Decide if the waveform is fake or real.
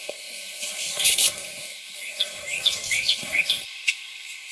fake